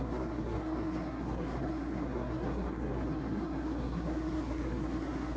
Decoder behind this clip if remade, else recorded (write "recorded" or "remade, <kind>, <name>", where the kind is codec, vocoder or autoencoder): remade, codec, SNAC